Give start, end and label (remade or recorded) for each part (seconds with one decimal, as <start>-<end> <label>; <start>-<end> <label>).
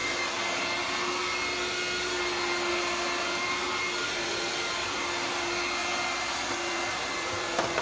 0.0-2.7 recorded; 2.7-5.8 remade; 5.8-6.7 recorded; 6.7-7.8 remade